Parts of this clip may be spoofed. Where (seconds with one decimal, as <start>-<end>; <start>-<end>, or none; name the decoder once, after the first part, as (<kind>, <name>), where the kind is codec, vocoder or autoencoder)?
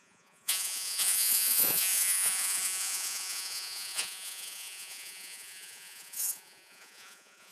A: 0.0-7.5 (vocoder, Vocos)